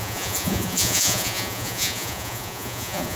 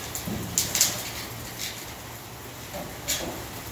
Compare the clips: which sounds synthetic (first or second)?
first